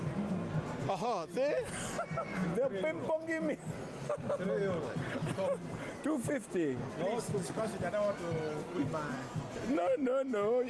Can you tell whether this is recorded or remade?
recorded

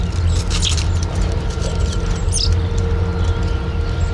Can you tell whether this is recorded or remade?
recorded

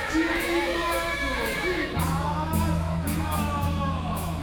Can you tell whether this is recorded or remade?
remade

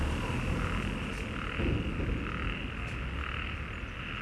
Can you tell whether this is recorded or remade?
recorded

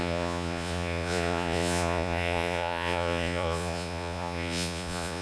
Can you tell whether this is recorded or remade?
remade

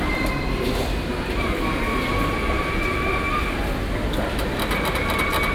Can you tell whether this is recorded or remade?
recorded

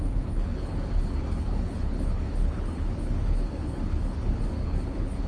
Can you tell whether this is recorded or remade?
remade